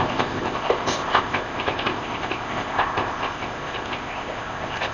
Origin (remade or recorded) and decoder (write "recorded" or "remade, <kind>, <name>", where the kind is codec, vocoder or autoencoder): remade, codec, ZipCodec